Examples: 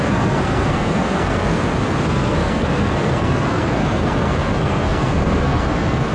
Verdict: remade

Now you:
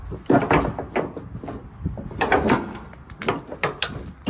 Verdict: recorded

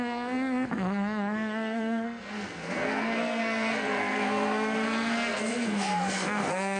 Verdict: remade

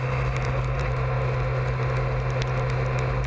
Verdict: recorded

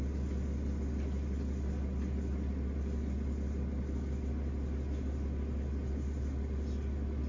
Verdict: recorded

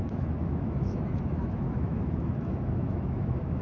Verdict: remade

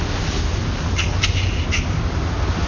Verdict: recorded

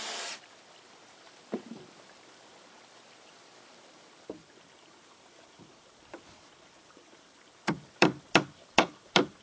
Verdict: remade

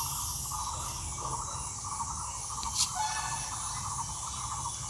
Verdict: recorded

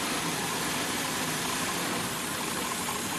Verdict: recorded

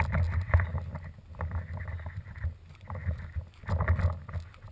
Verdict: recorded